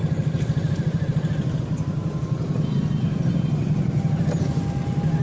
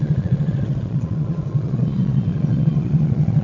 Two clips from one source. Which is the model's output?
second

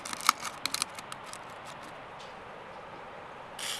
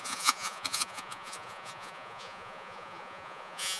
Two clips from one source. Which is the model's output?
second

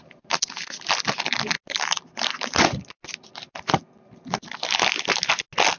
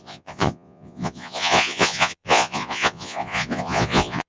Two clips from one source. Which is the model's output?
second